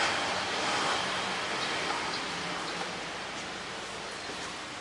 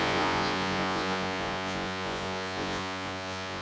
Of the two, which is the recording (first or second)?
first